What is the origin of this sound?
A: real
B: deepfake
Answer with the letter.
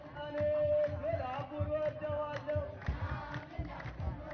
A